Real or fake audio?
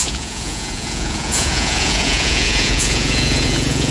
fake